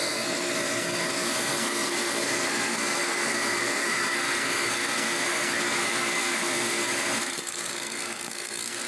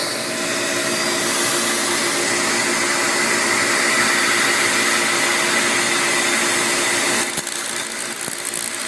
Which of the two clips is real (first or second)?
second